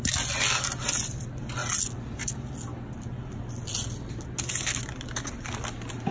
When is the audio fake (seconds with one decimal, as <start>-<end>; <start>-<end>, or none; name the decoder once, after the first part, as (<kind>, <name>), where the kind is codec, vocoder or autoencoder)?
none